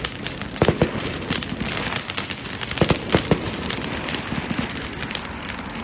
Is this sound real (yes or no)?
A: yes